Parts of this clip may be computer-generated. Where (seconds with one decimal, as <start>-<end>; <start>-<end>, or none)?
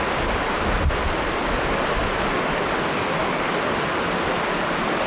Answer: 2.0-3.6